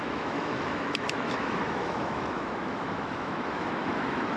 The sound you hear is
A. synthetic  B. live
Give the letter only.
A